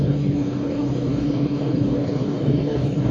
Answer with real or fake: fake